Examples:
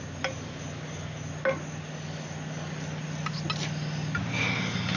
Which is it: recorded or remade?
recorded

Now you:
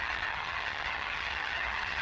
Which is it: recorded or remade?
remade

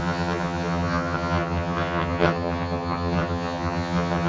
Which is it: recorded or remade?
remade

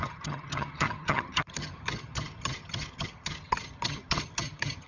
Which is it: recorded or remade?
remade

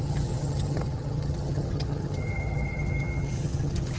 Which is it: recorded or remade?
remade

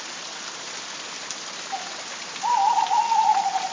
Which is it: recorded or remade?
recorded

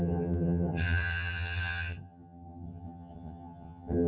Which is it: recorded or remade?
remade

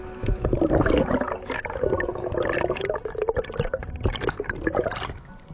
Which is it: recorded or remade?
recorded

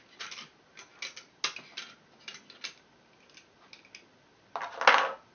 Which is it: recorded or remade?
recorded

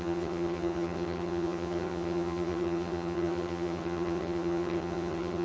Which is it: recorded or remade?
remade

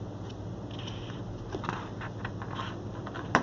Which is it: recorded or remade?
recorded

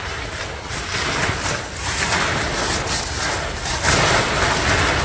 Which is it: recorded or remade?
recorded